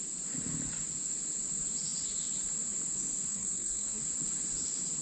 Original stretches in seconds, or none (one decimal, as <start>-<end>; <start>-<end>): 0.0-3.3; 4.0-5.0